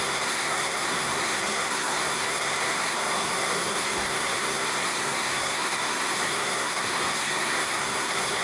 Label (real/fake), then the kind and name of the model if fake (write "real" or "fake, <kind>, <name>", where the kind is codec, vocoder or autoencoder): fake, codec, SNAC